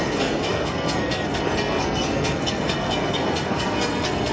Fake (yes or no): yes